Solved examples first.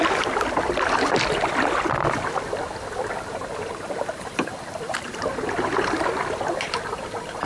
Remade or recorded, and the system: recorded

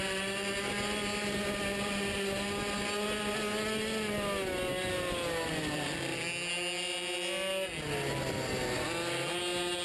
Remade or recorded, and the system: recorded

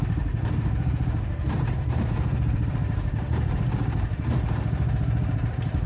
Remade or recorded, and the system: remade, vocoder, BigVGAN v2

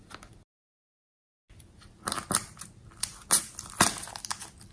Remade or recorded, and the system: recorded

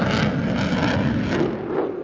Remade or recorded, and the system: recorded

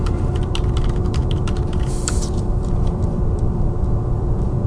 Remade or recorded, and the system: remade, vocoder, BigVGAN v2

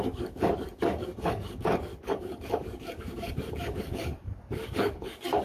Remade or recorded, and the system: remade, codec, DAC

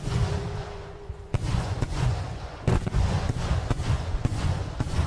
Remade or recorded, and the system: remade, vocoder, Vocos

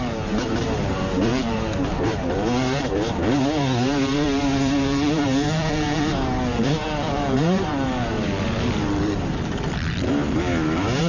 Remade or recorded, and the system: remade, vocoder, BigVGAN v2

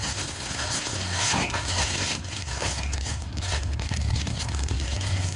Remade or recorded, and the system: remade, codec, SNAC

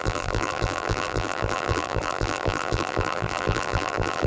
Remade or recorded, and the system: remade, vocoder, BigVGAN v2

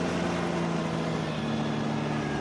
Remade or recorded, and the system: recorded